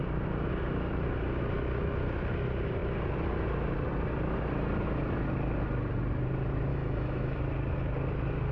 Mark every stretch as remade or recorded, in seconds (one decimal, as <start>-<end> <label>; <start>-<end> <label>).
0.0-6.7 recorded; 6.7-7.4 remade; 7.4-8.5 recorded